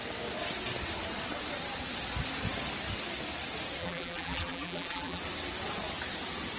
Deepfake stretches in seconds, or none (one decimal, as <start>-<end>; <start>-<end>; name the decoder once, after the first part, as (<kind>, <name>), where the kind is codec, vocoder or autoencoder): 3.8-5.2 (vocoder, BigVGAN v2)